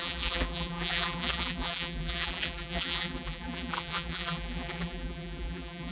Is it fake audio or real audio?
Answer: fake